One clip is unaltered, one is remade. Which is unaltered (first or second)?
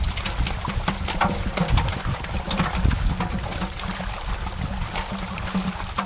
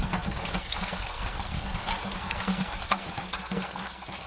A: first